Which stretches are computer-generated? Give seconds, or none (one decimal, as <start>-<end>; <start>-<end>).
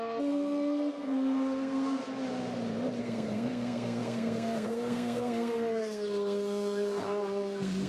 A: 0.0-2.0; 3.0-7.9